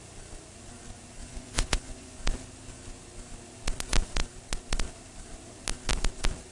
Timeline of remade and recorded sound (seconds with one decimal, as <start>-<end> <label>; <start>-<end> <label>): 0.0-1.2 recorded; 1.2-2.2 remade; 2.2-6.5 recorded